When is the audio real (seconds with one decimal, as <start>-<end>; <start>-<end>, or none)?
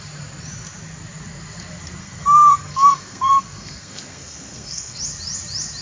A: 0.0-2.0; 5.0-5.8